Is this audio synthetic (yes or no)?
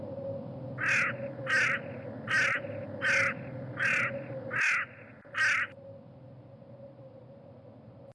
no